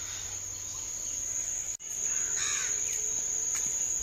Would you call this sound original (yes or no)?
yes